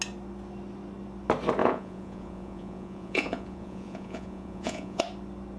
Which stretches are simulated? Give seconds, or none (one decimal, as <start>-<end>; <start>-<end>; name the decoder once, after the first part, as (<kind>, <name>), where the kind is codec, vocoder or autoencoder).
1.6-5.0 (vocoder, Vocos)